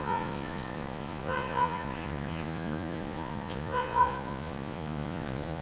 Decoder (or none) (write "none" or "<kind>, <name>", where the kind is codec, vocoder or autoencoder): vocoder, Vocos